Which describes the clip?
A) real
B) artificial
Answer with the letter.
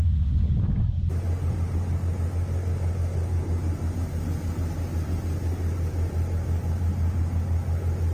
A